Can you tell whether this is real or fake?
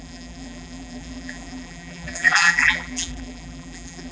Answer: fake